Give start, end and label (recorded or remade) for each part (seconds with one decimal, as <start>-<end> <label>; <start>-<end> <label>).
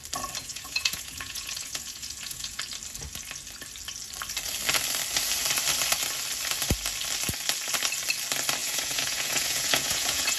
0.0-0.4 recorded; 0.4-2.6 remade; 2.6-8.6 recorded; 8.6-10.4 remade